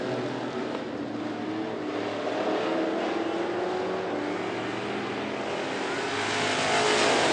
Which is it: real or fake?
real